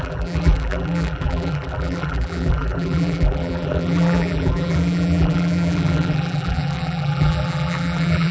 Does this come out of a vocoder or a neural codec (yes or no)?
yes